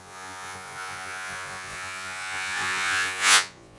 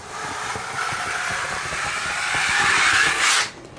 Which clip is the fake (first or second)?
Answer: first